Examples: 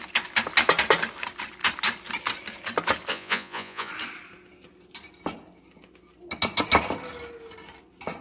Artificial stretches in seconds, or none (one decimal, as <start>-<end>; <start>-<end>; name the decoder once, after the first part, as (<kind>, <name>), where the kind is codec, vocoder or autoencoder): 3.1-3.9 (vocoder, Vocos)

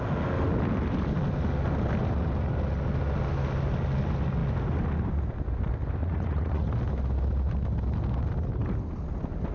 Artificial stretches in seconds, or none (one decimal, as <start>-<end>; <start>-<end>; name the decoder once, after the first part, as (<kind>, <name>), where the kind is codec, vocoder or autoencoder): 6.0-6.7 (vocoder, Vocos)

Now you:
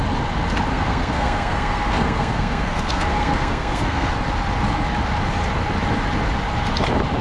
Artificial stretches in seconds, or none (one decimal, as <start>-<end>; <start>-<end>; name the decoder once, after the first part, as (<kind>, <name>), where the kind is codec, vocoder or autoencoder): 0.7-4.1 (codec, SNAC)

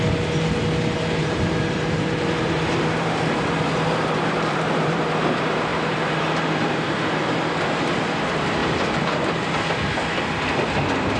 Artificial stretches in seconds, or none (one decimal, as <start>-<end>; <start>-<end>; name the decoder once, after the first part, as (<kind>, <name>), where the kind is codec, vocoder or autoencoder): 1.2-5.0 (vocoder, BigVGAN v2); 5.7-7.5; 8.6-9.2

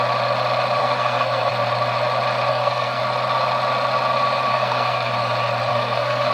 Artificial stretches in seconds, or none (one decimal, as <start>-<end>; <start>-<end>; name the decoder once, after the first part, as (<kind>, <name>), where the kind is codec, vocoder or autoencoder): 0.8-1.5 (codec, SNAC); 2.5-3.0; 4.5-5.1; 5.7-6.3

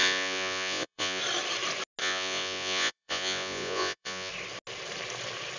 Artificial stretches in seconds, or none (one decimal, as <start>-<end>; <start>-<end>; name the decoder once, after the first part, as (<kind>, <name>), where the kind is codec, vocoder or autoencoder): 0.0-1.2 (vocoder, Vocos); 2.0-4.3